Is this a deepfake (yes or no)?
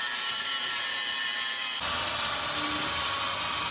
no